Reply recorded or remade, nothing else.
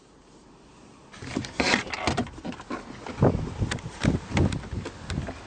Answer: recorded